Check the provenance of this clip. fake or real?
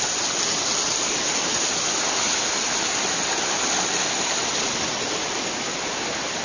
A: real